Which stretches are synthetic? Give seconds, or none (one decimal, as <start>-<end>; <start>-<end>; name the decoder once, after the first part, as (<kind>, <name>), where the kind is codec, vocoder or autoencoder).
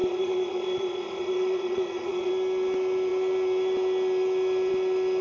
0.0-2.3 (vocoder, Vocos)